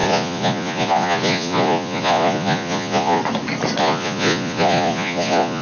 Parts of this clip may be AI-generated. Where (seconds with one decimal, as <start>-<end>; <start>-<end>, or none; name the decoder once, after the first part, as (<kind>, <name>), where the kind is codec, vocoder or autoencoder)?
0.0-3.2 (vocoder, Vocos); 3.8-5.6